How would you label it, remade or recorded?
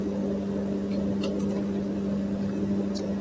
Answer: recorded